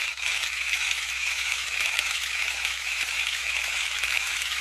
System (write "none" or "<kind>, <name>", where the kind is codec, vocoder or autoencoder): autoencoder, DAC-VAE